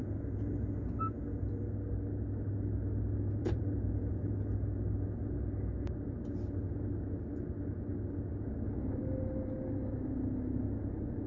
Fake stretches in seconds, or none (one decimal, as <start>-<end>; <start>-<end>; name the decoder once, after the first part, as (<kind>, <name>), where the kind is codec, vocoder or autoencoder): 3.4-4.3 (vocoder, BigVGAN v2)